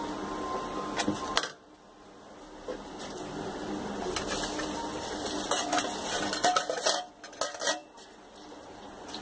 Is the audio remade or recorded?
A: recorded